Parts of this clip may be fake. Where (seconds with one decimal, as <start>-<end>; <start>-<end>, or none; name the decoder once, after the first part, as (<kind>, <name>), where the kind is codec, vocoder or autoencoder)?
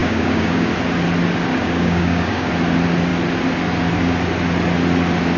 0.0-0.7 (codec, DAC); 1.5-2.5